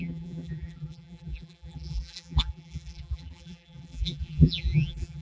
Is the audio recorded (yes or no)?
no